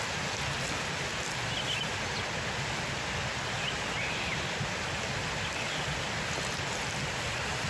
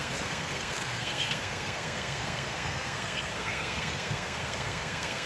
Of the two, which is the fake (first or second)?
second